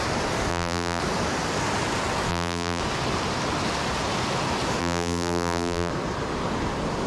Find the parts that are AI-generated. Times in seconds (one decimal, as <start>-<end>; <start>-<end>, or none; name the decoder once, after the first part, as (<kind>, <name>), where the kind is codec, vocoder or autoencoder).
0.5-1.0 (vocoder, BigVGAN v2); 2.3-2.8; 4.8-5.9